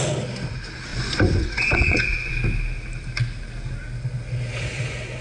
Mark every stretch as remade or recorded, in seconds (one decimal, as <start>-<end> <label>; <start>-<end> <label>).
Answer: 0.0-0.9 recorded; 0.9-2.3 remade; 2.3-5.2 recorded